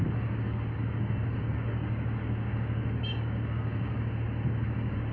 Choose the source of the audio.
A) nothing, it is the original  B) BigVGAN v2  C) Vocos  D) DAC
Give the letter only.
D